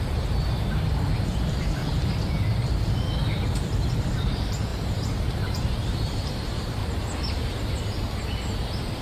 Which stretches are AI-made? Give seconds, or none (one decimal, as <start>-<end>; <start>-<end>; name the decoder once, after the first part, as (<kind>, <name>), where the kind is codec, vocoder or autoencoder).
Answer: 0.0-1.8 (vocoder, BigVGAN v2); 4.1-6.8